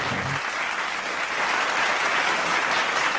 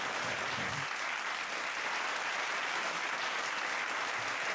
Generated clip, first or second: second